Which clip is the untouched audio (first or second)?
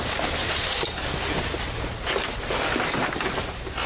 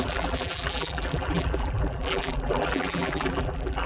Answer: first